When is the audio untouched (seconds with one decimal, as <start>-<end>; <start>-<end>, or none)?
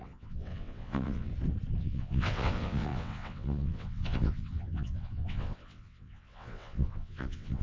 1.3-1.8